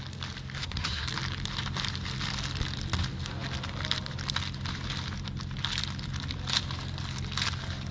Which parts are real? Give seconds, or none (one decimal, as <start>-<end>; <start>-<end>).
0.0-0.6; 1.1-7.9